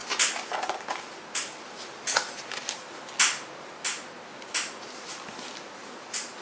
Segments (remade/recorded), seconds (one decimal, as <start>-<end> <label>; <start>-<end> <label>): 0.0-6.4 recorded